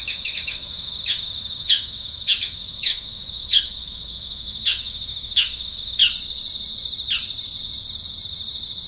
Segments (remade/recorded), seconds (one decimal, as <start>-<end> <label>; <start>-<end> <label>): 0.0-6.0 remade; 6.0-8.9 recorded